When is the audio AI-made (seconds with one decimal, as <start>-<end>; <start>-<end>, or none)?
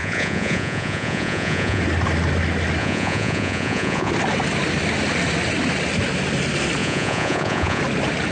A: 0.0-1.8; 2.8-4.1; 6.8-7.8